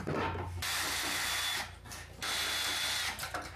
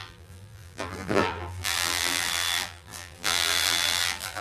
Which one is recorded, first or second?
first